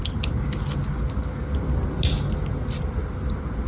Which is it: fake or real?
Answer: real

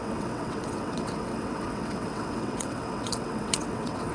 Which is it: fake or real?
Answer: fake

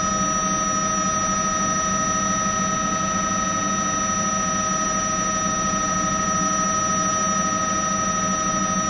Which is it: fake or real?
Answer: real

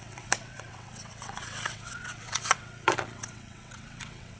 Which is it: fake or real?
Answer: fake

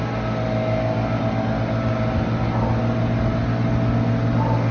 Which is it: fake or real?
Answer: real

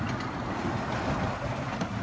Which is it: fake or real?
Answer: real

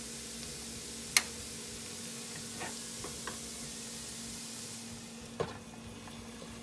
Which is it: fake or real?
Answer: real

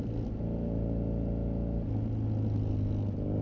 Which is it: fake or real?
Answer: real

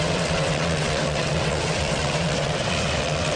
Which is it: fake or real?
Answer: fake